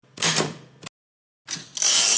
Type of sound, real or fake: real